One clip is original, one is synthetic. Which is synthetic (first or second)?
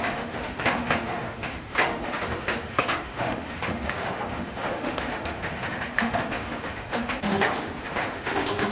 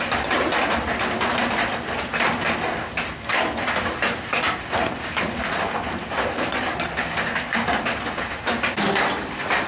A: first